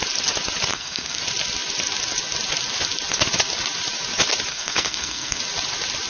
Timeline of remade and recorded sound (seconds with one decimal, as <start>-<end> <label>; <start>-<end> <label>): 0.0-0.7 recorded; 0.7-1.2 remade; 1.2-4.5 recorded; 4.5-5.4 remade; 5.4-6.1 recorded